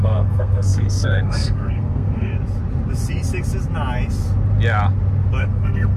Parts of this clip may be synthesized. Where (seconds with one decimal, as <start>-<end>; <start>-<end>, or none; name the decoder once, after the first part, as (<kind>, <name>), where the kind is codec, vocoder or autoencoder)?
0.0-2.3 (codec, SNAC); 5.4-6.0